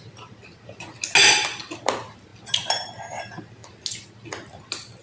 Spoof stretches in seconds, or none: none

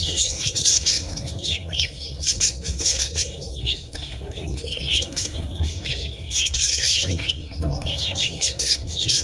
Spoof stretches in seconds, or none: 0.0-9.2 (codec, SNAC)

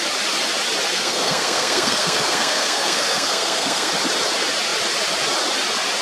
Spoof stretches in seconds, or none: 0.9-3.9 (codec, SNAC)

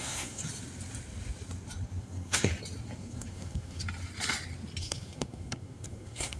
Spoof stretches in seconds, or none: 0.0-0.4 (codec, SNAC); 2.0-2.5; 3.0-3.8; 4.8-6.4